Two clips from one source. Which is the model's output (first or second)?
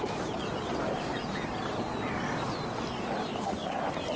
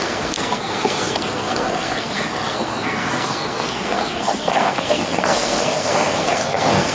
second